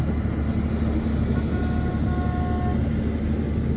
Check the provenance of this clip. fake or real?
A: real